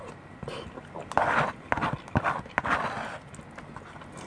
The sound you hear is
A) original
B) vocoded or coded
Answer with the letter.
A